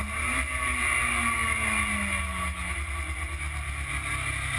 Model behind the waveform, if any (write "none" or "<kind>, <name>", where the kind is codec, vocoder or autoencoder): none